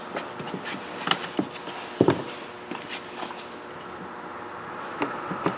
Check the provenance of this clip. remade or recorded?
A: recorded